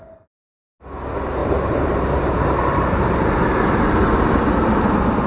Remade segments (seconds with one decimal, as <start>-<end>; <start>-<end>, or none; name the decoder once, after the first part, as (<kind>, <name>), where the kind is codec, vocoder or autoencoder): 1.4-3.7 (vocoder, BigVGAN v2)